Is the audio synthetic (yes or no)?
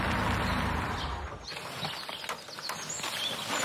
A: no